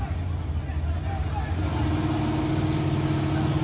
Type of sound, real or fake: real